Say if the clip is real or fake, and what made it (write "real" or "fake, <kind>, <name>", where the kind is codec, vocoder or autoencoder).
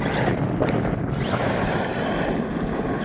fake, vocoder, BigVGAN v2